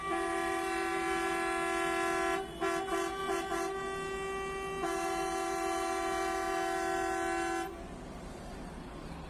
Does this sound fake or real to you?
real